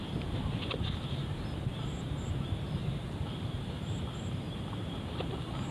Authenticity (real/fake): fake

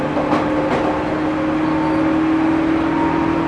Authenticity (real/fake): real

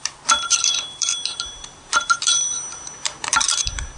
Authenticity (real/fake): fake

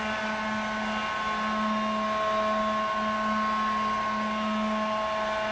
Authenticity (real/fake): real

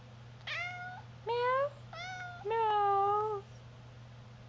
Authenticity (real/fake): real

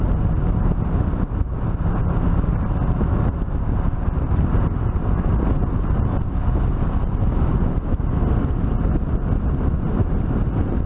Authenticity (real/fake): real